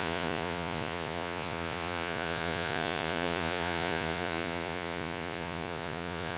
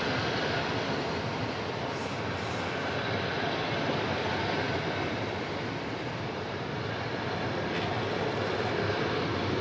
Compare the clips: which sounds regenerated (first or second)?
first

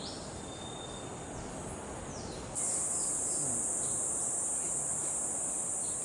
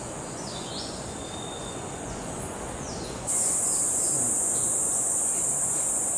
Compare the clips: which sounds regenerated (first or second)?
second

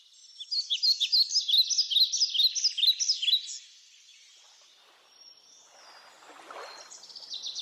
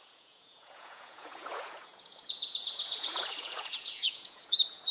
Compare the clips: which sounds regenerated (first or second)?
second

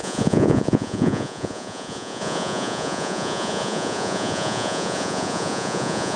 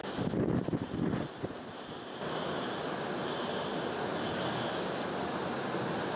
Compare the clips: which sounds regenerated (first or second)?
first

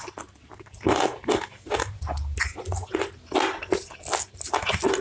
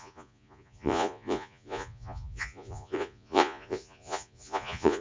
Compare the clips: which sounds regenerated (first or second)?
second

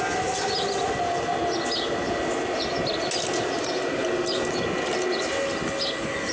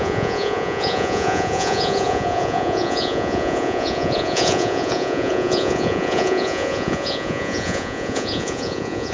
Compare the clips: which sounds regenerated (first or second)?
second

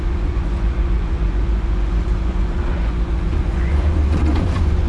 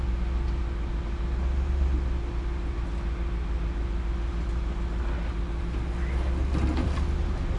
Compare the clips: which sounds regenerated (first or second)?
first